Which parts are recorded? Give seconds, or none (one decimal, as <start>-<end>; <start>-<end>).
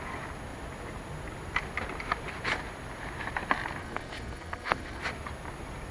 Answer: 0.0-3.8; 5.0-5.9